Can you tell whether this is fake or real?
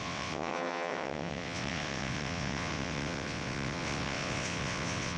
fake